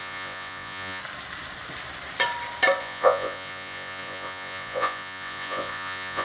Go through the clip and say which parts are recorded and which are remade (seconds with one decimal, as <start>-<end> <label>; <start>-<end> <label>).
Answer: 0.0-1.0 remade; 1.0-2.8 recorded; 2.8-6.2 remade